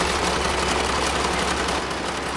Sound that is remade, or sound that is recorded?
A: recorded